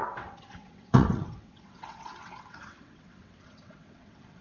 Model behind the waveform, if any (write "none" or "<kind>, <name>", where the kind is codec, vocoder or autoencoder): vocoder, WaveNeXt